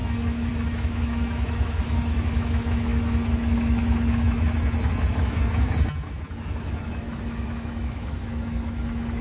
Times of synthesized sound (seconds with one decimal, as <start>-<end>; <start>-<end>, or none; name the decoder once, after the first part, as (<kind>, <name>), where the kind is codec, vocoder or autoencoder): 0.0-9.2 (autoencoder, DAC-VAE)